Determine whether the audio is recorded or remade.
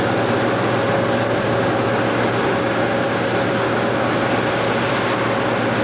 recorded